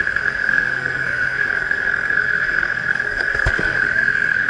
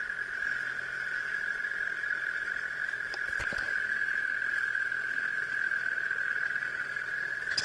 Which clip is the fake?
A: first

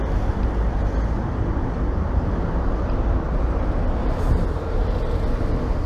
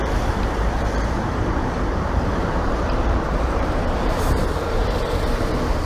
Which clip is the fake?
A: second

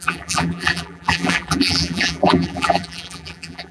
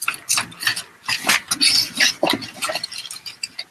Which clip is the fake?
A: first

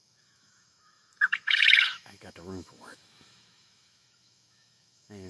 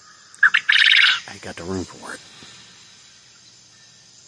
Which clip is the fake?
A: first